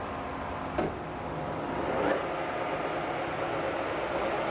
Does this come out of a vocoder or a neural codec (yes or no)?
no